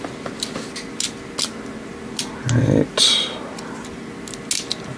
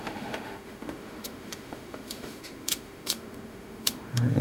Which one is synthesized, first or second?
second